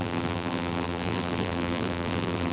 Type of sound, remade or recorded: remade